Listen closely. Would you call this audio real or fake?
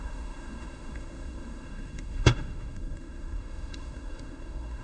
fake